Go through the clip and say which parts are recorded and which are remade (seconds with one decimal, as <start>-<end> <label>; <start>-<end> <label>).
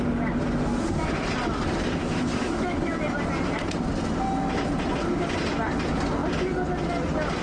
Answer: 0.0-2.0 recorded; 2.0-2.9 remade; 2.9-7.4 recorded